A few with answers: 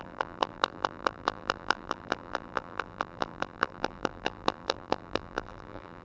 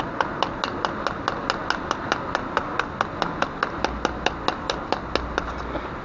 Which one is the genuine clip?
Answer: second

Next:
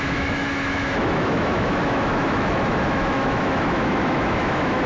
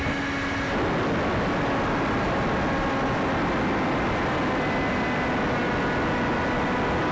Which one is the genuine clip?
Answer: second